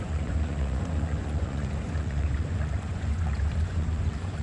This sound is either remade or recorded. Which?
remade